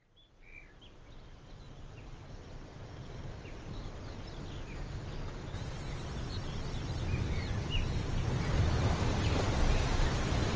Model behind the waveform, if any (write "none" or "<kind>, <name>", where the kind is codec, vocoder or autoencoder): none